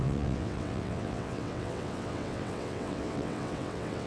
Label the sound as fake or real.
fake